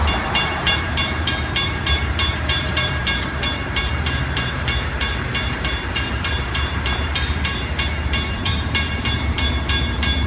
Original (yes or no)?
no